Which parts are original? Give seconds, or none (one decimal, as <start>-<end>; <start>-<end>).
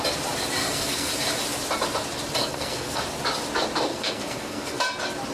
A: 0.0-0.6; 1.1-2.4; 3.0-3.9; 4.8-5.3